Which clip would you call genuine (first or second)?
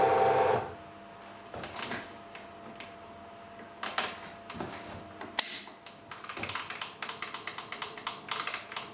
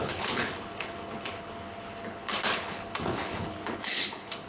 first